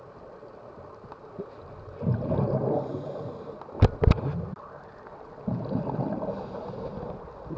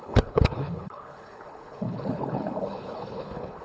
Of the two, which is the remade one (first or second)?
second